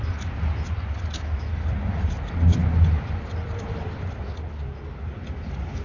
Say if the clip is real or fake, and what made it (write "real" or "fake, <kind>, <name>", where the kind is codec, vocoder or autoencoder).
real